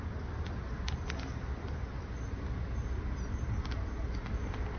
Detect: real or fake real